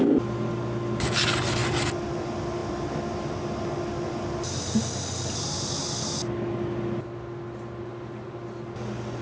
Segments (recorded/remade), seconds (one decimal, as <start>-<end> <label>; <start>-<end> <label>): 0.0-9.2 recorded